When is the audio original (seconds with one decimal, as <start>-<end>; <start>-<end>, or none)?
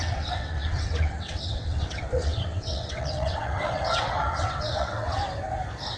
5.2-6.0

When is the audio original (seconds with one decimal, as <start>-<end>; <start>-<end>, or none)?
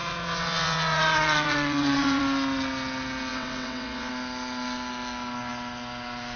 2.2-3.3; 4.1-6.4